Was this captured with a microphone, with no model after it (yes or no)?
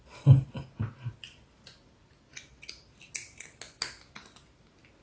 yes